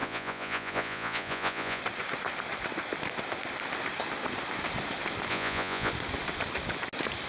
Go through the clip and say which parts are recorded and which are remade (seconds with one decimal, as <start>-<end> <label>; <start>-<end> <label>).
0.0-1.8 remade; 1.8-5.3 recorded; 5.3-5.9 remade; 5.9-7.3 recorded